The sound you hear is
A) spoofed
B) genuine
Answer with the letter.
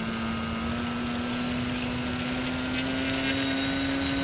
B